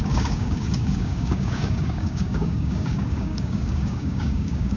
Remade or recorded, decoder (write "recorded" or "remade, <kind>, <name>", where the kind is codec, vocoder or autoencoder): remade, codec, DAC